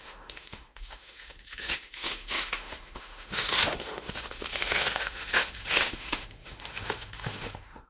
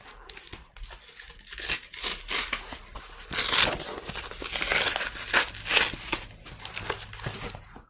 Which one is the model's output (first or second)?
first